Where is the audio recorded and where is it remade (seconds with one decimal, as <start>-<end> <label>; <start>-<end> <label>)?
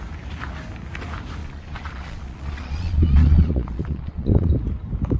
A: 0.0-1.4 recorded; 1.4-4.5 remade; 4.5-5.2 recorded